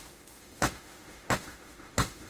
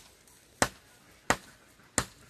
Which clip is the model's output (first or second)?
first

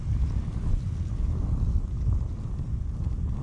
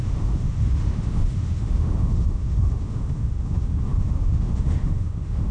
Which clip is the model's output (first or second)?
second